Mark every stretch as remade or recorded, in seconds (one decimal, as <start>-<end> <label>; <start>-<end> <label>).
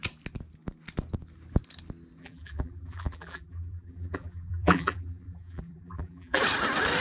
0.0-2.2 recorded; 2.2-6.4 remade; 6.4-7.0 recorded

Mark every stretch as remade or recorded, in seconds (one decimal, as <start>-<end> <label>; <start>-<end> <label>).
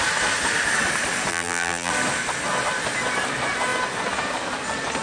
0.0-1.3 recorded; 1.3-1.9 remade; 1.9-5.0 recorded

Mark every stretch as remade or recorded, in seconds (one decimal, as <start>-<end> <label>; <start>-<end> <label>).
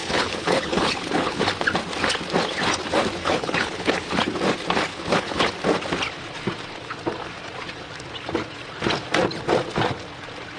0.0-1.4 remade; 1.4-3.2 recorded; 3.2-4.2 remade; 4.2-4.9 recorded; 4.9-5.5 remade; 5.5-10.6 recorded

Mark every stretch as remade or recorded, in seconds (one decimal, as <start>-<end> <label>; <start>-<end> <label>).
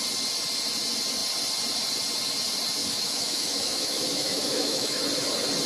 0.0-2.8 recorded; 2.8-5.0 remade; 5.0-5.7 recorded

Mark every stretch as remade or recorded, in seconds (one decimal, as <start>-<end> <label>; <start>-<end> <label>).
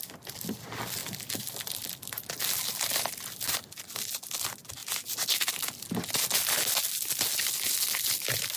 0.0-1.0 recorded; 1.0-1.9 remade; 1.9-4.8 recorded; 4.8-5.5 remade; 5.5-8.6 recorded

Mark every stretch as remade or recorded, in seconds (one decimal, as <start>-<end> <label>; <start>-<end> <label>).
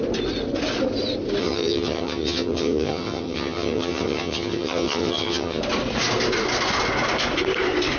0.0-1.4 recorded; 1.4-5.6 remade; 5.6-8.0 recorded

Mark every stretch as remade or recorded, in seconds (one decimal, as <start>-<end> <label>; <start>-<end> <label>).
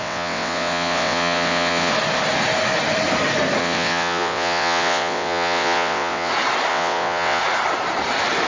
0.0-1.9 remade; 1.9-3.6 recorded; 3.6-6.3 remade; 6.3-6.7 recorded; 6.7-7.4 remade; 7.4-8.5 recorded